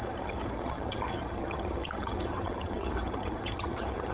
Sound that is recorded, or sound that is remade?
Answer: remade